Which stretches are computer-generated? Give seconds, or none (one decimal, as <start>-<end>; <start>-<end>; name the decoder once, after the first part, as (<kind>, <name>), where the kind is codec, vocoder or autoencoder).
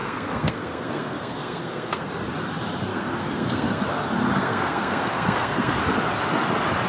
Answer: 0.0-2.1 (codec, SNAC); 2.9-3.8; 4.4-5.8